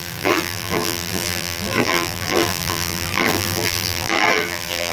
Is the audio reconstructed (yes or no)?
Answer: yes